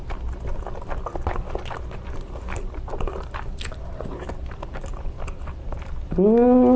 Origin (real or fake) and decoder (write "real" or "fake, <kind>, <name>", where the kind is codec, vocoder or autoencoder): real